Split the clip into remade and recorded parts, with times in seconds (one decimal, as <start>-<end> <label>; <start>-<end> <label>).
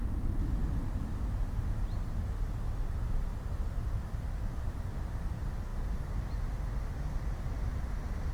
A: 0.0-8.3 recorded